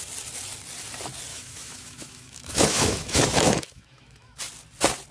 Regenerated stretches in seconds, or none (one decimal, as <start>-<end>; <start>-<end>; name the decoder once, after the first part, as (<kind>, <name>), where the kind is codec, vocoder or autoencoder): 1.3-4.4 (autoencoder, DAC-VAE)